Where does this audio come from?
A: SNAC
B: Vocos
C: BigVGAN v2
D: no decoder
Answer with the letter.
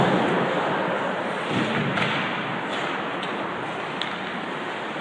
D